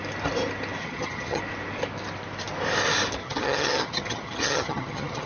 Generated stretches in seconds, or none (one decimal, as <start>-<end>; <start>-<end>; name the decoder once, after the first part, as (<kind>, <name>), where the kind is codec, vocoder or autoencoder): 0.8-1.4 (vocoder, HiFi-GAN); 3.2-5.3